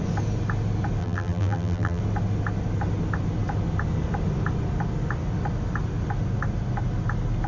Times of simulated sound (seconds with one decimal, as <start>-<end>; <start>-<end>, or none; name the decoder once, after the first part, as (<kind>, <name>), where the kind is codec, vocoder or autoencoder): 1.0-2.0 (vocoder, BigVGAN v2)